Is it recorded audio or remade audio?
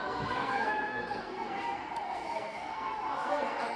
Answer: remade